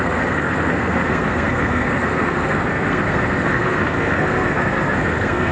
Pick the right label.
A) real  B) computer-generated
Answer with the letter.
B